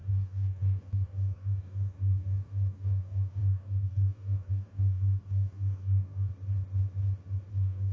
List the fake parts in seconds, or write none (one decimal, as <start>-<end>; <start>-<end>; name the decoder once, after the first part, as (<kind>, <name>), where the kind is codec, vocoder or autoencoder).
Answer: 0.0-6.3 (codec, DAC); 7.5-7.9